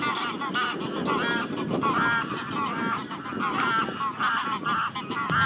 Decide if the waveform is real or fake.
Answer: real